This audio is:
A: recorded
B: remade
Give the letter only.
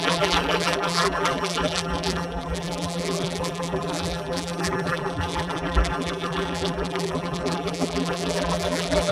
B